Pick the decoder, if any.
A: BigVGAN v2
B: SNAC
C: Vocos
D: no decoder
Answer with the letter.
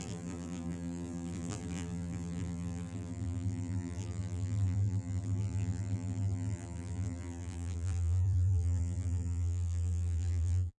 A